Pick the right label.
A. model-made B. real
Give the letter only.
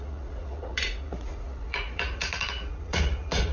A